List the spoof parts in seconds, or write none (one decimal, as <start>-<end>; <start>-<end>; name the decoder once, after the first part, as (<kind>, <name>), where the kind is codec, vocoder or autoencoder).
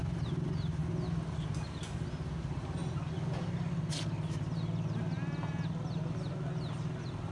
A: none